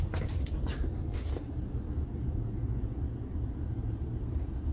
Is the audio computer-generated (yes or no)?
no